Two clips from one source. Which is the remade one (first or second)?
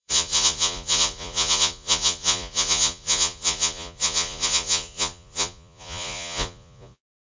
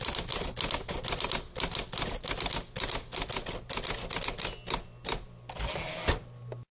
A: first